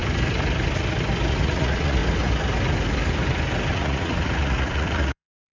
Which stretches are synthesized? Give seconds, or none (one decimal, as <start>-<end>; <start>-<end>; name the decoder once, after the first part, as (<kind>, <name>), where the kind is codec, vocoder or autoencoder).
1.3-2.0 (vocoder, Vocos); 3.7-5.5